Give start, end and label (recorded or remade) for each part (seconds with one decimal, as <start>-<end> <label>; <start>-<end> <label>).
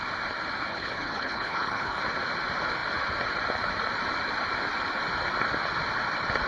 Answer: 0.0-0.7 recorded; 0.7-2.0 remade; 2.0-6.5 recorded